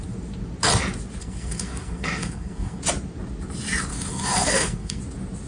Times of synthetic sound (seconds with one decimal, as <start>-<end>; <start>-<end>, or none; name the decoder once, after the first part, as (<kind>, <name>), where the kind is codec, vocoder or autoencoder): 1.2-2.8 (codec, SNAC); 3.9-5.0